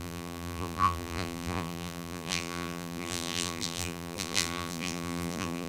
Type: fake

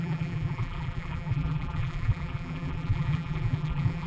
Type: fake